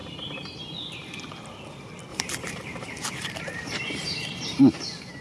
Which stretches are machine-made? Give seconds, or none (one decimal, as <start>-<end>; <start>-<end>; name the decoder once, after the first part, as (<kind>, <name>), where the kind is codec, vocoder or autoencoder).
2.1-4.6 (vocoder, BigVGAN v2)

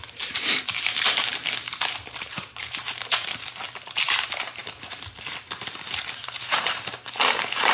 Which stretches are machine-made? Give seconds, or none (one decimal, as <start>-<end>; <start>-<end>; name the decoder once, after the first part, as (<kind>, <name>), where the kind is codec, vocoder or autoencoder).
0.0-7.7 (vocoder, BigVGAN v2)

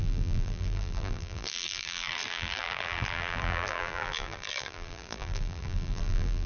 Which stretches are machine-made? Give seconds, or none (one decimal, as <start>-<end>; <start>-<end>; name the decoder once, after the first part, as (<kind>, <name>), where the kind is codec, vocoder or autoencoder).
0.0-6.5 (vocoder, BigVGAN v2)

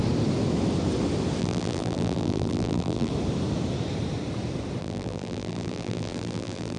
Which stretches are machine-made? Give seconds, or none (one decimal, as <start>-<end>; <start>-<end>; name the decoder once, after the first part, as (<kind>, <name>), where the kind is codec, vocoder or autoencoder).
1.4-3.1 (vocoder, BigVGAN v2); 4.8-6.8